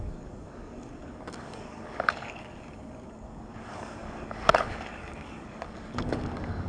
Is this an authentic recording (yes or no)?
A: no